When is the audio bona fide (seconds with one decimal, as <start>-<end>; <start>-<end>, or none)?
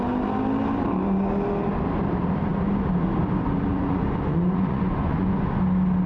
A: 0.0-3.7; 5.6-6.1